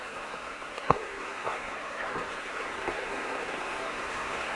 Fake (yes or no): yes